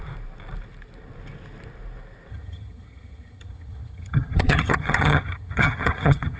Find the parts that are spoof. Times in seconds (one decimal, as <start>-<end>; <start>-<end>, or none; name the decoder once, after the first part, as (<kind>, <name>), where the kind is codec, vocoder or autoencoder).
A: 2.3-6.4 (vocoder, HiFi-GAN)

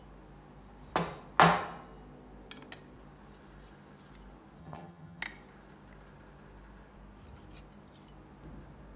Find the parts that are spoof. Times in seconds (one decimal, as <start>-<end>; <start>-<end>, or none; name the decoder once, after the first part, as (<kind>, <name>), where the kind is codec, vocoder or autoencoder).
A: 4.6-5.2 (vocoder, HiFi-GAN)

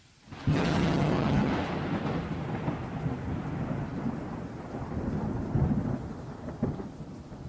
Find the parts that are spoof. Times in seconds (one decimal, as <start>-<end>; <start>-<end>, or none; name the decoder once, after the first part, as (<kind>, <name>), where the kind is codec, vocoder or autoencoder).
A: 0.5-1.5 (vocoder, HiFi-GAN)

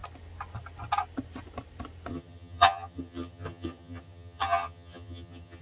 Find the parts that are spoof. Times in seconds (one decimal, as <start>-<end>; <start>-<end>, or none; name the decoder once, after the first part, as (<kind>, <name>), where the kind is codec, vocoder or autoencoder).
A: 2.1-5.6 (vocoder, HiFi-GAN)